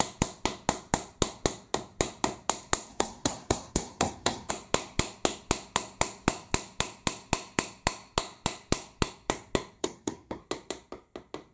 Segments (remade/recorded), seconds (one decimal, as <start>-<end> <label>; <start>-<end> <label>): 0.0-2.9 recorded; 2.9-4.5 remade; 4.5-9.8 recorded; 9.8-10.4 remade; 10.4-11.5 recorded